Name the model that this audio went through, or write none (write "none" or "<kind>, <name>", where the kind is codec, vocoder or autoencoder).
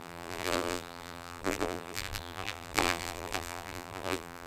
vocoder, BigVGAN v2